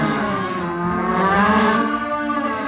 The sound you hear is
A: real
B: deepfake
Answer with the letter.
B